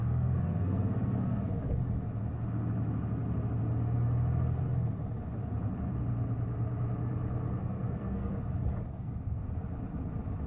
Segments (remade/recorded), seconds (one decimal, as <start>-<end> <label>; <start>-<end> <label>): 0.0-1.5 remade; 1.5-7.6 recorded; 7.6-8.3 remade; 8.3-8.9 recorded; 8.9-9.5 remade; 9.5-10.5 recorded